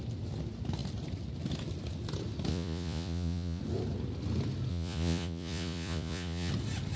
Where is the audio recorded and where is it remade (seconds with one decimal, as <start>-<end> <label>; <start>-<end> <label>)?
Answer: 0.0-2.5 recorded; 2.5-3.6 remade; 3.6-4.7 recorded; 4.7-6.5 remade; 6.5-7.0 recorded